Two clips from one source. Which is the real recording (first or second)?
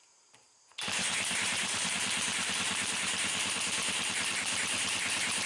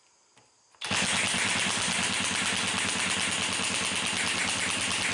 second